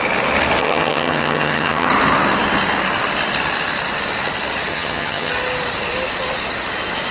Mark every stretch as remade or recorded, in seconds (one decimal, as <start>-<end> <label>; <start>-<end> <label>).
0.0-0.6 recorded; 0.6-1.9 remade; 1.9-4.7 recorded; 4.7-5.3 remade; 5.3-7.1 recorded